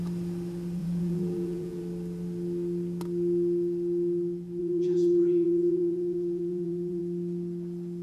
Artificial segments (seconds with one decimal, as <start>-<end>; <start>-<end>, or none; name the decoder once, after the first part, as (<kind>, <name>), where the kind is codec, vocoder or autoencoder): 0.8-1.8 (vocoder, Vocos); 4.6-7.0